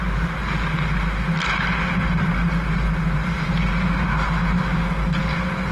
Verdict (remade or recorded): recorded